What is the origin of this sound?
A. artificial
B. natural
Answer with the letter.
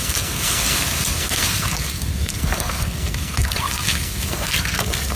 A